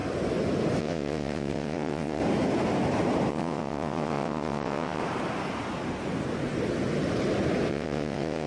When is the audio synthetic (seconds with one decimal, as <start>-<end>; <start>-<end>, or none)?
0.8-2.2; 3.3-5.0; 7.7-8.5